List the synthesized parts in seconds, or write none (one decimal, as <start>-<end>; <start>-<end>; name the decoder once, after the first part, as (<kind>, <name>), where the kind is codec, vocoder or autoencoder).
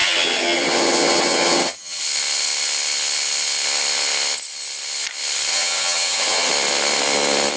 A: 0.0-2.0 (vocoder, HiFi-GAN); 5.5-6.5